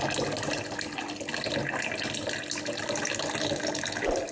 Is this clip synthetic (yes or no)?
no